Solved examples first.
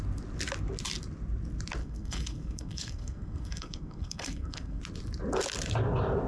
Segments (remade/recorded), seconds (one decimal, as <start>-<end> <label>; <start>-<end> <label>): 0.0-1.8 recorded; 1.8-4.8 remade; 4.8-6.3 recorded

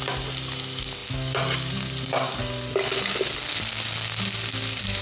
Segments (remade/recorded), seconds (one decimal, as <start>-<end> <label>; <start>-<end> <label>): 0.0-5.0 recorded

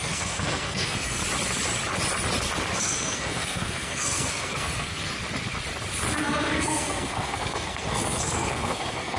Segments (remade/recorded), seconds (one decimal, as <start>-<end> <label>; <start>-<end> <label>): 0.0-1.2 remade; 1.2-2.8 recorded; 2.8-5.1 remade; 5.1-6.1 recorded; 6.1-9.2 remade